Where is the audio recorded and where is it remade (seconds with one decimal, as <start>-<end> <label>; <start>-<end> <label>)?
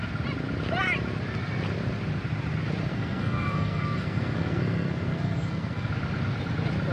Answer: 0.0-2.9 recorded; 2.9-5.9 remade; 5.9-6.9 recorded